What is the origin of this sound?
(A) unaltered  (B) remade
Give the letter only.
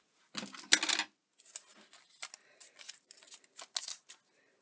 A